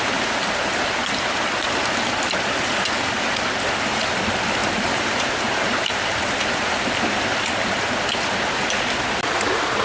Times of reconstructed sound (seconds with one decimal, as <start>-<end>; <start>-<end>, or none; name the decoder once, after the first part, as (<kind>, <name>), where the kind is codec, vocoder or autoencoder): 4.6-6.7 (vocoder, BigVGAN v2)

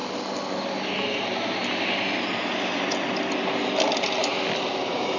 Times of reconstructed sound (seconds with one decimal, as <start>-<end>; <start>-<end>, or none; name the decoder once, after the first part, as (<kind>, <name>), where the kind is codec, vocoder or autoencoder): 1.2-1.6 (vocoder, BigVGAN v2); 4.7-5.2

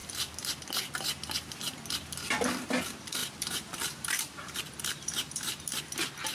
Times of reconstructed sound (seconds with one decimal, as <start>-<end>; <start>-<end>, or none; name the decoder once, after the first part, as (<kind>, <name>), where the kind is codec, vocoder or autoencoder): 3.2-5.8 (vocoder, BigVGAN v2)